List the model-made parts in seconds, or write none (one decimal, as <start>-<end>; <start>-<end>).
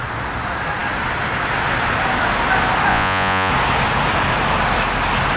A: 2.9-3.5